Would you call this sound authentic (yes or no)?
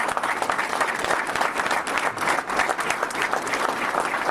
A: yes